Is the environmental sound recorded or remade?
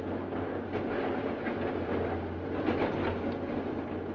recorded